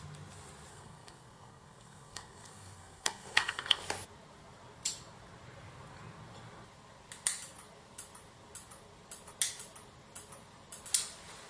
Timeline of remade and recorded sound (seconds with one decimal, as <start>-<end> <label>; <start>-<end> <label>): 0.0-0.7 recorded; 0.7-3.8 remade; 3.8-11.5 recorded